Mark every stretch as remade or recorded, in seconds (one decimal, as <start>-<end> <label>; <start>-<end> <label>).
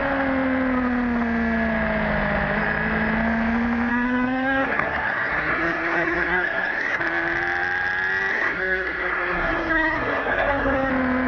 0.0-3.9 recorded; 3.9-7.0 remade; 7.0-8.3 recorded; 8.3-10.9 remade; 10.9-11.3 recorded